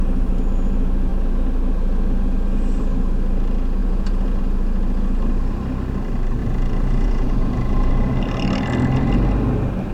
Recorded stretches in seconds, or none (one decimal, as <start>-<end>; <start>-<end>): 0.0-3.8; 4.4-6.4; 7.9-9.9